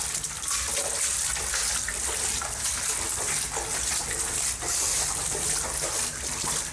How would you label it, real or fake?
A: real